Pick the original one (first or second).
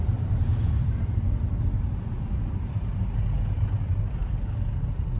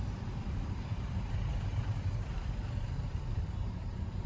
first